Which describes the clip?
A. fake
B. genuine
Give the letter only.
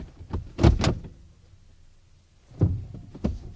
B